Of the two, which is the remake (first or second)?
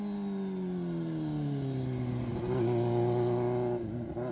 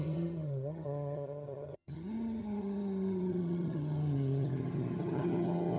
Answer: second